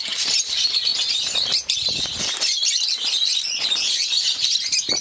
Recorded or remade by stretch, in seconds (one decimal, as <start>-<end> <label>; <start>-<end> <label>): 0.0-5.0 recorded